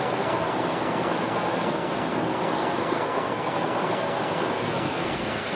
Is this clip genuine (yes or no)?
no